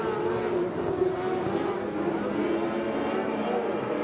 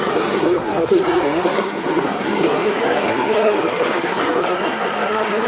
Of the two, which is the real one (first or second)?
first